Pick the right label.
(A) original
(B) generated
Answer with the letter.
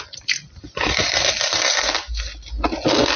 A